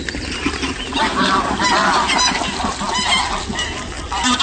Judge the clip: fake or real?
real